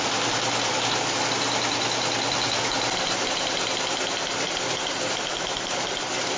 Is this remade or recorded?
recorded